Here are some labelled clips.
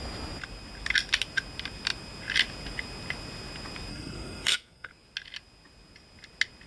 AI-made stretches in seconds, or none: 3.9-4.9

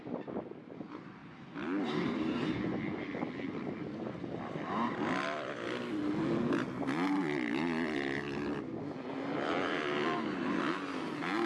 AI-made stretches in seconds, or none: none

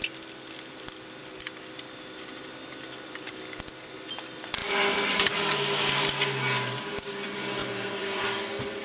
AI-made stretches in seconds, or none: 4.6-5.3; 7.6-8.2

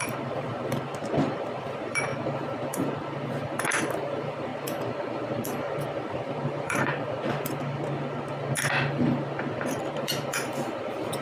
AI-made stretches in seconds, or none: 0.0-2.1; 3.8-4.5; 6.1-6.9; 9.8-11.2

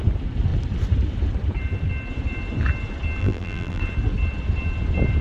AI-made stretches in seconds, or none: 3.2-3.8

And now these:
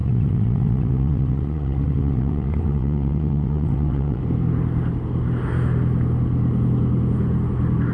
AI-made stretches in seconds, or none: 0.0-4.2

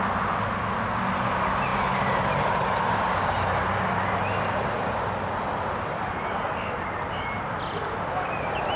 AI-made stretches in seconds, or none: none

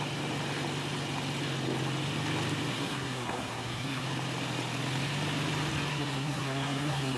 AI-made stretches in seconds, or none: 2.7-4.0; 5.9-7.2